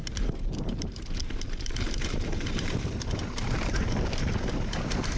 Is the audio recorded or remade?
remade